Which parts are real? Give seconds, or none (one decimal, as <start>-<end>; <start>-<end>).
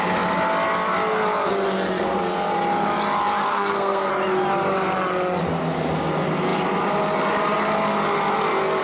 0.0-3.5; 4.1-8.8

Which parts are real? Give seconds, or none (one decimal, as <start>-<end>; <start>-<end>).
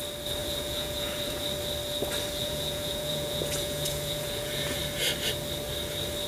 0.0-0.4; 1.4-2.4; 4.8-6.3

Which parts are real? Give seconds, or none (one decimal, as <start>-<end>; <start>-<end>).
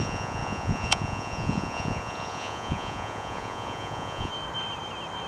4.3-5.3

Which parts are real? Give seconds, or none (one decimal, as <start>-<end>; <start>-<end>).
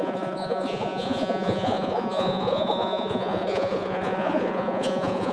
none